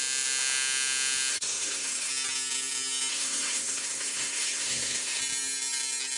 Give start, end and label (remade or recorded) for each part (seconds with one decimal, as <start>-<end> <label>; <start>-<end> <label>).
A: 0.0-1.3 recorded; 1.3-2.1 remade; 2.1-3.1 recorded; 3.1-5.2 remade; 5.2-6.2 recorded